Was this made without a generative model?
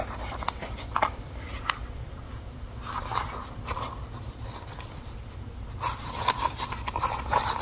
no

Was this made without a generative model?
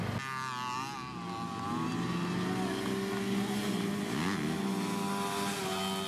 yes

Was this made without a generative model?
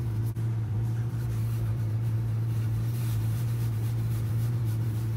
no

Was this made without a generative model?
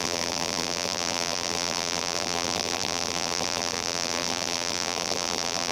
no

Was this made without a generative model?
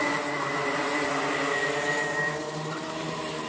yes